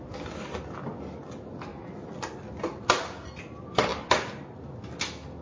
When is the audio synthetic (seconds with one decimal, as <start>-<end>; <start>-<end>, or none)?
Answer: none

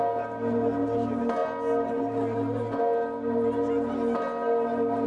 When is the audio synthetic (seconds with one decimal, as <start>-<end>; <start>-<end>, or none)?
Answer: none

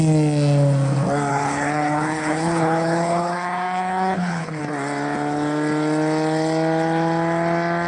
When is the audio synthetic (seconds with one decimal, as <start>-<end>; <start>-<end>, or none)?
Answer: 1.3-4.6

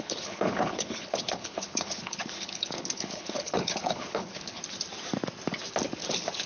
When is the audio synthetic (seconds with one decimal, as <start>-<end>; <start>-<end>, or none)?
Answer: 0.0-4.6; 6.1-6.5